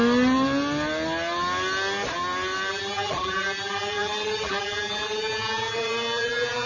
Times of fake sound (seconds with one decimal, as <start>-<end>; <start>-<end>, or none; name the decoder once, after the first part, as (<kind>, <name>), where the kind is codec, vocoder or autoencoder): 2.7-6.7 (vocoder, BigVGAN v2)